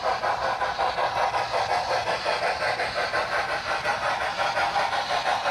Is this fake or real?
real